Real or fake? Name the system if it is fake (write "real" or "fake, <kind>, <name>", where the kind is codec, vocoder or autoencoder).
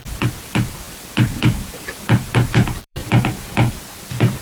fake, vocoder, BigVGAN v2